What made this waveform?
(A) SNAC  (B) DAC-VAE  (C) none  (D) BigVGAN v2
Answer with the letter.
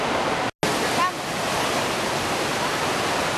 C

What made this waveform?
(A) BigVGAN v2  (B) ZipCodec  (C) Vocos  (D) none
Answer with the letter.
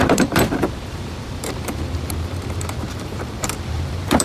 A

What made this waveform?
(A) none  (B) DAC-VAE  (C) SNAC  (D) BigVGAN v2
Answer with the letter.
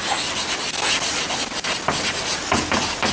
A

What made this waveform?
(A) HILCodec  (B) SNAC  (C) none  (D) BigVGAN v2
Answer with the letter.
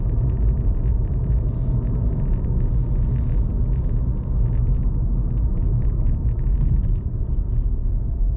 C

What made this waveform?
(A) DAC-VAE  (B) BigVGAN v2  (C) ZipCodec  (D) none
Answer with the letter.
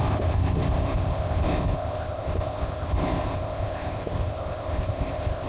C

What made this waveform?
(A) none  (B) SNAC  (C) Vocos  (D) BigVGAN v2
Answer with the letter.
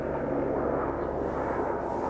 A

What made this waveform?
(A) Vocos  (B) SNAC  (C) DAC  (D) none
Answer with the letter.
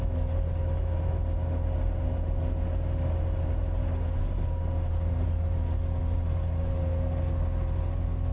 D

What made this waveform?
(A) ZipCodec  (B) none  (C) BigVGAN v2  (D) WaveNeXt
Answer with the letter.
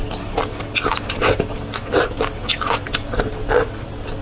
B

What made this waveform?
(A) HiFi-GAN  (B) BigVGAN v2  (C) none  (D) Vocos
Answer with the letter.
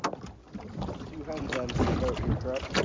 C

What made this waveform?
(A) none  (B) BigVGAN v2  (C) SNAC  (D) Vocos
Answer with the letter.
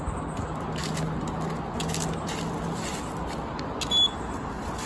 A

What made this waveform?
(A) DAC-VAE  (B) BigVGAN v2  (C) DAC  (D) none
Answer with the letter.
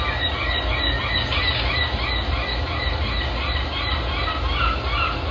D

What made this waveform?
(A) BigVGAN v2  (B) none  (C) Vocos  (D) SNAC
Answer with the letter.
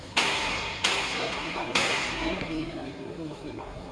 D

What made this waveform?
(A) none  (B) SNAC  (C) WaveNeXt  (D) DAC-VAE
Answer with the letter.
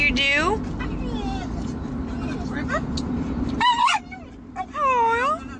A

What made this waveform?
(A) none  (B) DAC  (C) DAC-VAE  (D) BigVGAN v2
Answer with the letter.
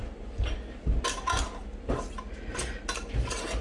A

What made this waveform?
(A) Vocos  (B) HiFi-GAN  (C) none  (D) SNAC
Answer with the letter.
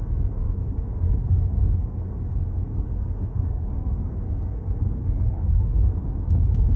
D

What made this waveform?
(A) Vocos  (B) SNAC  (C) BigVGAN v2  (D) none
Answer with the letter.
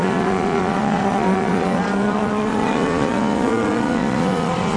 A